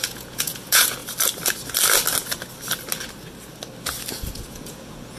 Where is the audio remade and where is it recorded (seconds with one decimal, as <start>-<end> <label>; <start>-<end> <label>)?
0.0-1.0 remade; 1.0-4.1 recorded; 4.1-5.2 remade